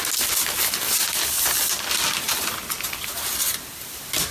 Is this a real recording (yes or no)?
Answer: yes